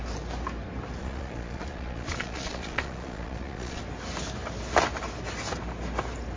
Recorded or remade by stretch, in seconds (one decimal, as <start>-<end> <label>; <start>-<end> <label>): 0.0-1.0 recorded; 1.0-3.8 remade; 3.8-6.4 recorded